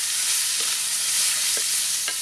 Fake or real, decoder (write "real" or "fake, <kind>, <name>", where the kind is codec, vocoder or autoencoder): real